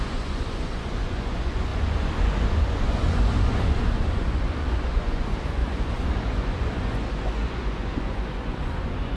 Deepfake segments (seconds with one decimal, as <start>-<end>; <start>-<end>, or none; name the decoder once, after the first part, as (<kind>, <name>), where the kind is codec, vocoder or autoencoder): 0.0-9.2 (vocoder, Vocos)